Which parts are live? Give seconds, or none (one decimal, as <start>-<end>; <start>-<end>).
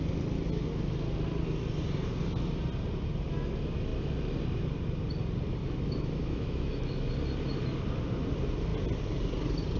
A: 0.0-5.6; 7.1-9.8